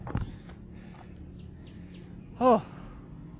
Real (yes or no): yes